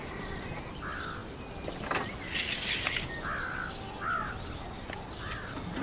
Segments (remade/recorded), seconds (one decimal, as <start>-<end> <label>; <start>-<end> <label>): 0.0-5.8 recorded